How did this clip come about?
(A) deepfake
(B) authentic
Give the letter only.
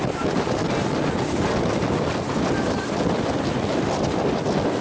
B